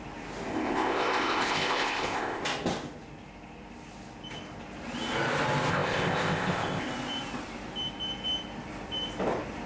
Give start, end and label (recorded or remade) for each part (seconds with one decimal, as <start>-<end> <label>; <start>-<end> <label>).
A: 0.0-0.5 recorded; 0.5-2.4 remade; 2.4-5.7 recorded; 5.7-6.9 remade; 6.9-9.7 recorded